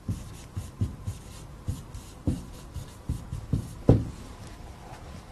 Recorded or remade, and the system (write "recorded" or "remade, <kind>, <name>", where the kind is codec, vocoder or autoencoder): recorded